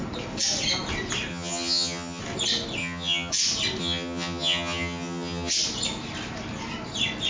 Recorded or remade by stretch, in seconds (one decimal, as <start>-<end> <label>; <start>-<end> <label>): 0.0-1.3 recorded; 1.3-2.2 remade; 2.2-2.8 recorded; 2.8-3.3 remade; 3.3-3.8 recorded; 3.8-5.5 remade; 5.5-7.3 recorded